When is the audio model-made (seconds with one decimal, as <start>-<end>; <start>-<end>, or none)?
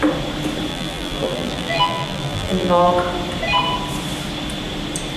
0.7-2.9